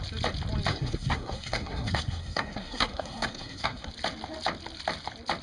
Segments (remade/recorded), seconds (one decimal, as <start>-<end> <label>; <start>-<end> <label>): 0.0-0.7 recorded; 0.7-3.9 remade; 3.9-5.4 recorded